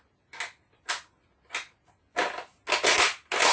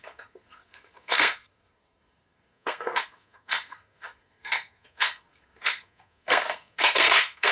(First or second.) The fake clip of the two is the second